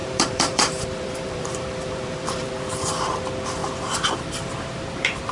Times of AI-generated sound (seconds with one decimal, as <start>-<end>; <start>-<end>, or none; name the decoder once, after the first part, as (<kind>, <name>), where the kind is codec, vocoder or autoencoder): 0.0-2.5 (vocoder, BigVGAN v2)